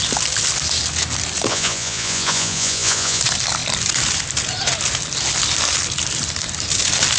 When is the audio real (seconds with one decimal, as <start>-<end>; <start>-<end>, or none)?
0.0-1.5; 3.2-7.2